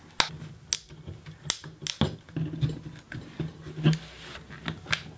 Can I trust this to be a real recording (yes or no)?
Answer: yes